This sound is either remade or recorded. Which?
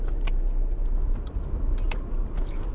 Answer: recorded